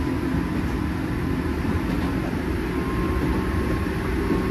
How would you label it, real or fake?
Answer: real